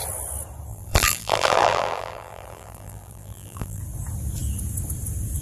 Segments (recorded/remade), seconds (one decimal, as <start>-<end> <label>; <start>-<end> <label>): 0.0-0.7 recorded; 0.7-3.8 remade; 3.8-5.4 recorded